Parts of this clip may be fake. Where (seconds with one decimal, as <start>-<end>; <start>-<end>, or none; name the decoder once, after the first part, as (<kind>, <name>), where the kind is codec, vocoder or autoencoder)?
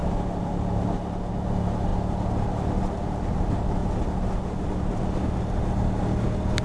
none